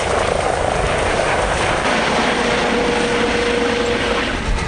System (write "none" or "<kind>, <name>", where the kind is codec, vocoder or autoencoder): none